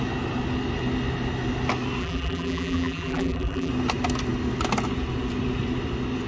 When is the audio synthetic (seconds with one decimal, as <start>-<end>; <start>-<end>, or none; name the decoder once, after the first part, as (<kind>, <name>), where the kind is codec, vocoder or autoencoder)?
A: 2.0-3.7 (vocoder, BigVGAN v2)

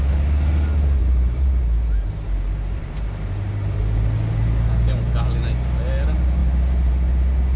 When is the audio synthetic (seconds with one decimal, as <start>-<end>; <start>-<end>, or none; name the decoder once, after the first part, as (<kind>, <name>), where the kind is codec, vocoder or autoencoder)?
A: 1.0-3.8 (vocoder, BigVGAN v2)

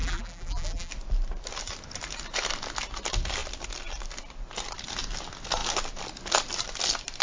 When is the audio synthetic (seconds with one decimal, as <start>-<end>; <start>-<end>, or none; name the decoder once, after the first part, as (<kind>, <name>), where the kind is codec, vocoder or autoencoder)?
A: 0.0-0.9 (vocoder, BigVGAN v2)

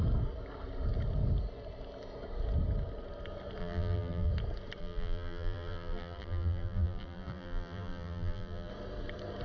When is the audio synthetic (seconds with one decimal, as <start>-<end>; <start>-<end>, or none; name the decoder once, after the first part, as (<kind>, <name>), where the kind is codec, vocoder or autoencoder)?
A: 3.6-4.3 (vocoder, BigVGAN v2); 4.8-8.7

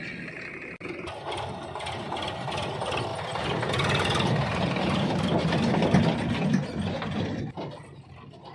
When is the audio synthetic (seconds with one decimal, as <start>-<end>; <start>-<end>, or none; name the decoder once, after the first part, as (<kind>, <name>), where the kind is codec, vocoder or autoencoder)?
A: none

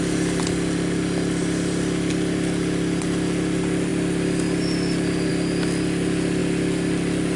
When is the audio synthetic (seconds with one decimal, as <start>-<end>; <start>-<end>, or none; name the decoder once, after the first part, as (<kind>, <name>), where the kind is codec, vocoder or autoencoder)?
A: none

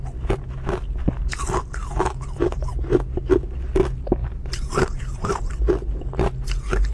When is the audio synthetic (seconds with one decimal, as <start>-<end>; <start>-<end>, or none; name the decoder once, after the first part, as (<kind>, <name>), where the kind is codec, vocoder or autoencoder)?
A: 4.2-5.5 (vocoder, BigVGAN v2)